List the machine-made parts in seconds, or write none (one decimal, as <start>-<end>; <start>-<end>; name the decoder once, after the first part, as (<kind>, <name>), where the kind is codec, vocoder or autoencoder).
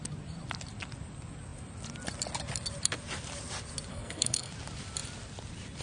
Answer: 3.9-4.5 (codec, SNAC)